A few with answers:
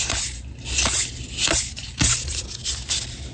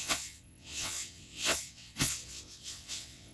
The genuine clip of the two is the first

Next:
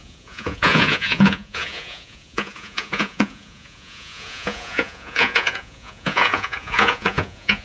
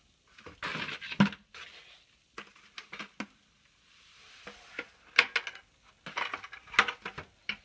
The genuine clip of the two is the second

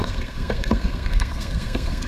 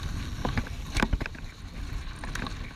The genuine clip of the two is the second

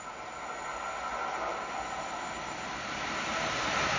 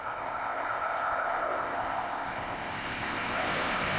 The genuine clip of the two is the first